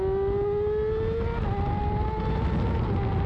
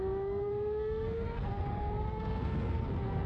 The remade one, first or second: second